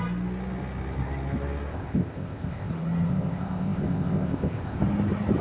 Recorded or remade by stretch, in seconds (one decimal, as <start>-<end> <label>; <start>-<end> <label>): 0.0-1.7 recorded; 1.7-2.7 remade; 2.7-3.1 recorded; 3.1-4.8 remade; 4.8-5.4 recorded